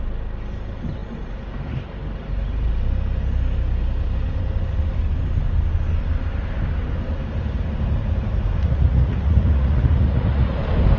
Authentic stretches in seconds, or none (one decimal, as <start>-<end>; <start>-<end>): 0.0-8.6; 10.6-11.0

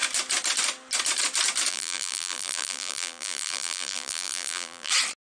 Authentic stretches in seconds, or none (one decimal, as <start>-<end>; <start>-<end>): 0.0-1.7; 4.9-5.4

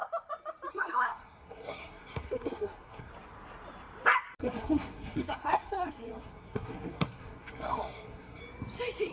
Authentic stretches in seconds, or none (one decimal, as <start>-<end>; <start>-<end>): 0.0-0.7; 3.1-4.4; 8.4-9.1